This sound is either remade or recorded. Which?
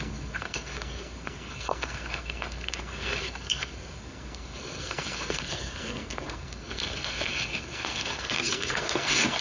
remade